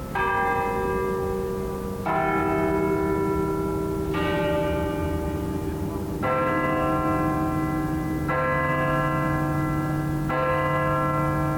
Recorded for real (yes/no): yes